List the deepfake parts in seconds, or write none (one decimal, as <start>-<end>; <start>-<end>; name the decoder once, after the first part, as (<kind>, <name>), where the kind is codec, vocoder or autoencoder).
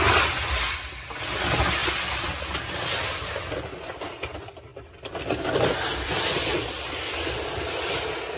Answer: none